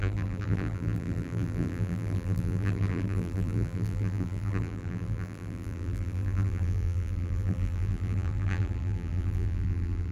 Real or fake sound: fake